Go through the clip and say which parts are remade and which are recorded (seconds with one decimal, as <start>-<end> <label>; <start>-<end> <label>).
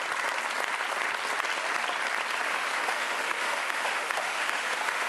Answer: 0.0-2.5 recorded; 2.5-5.1 remade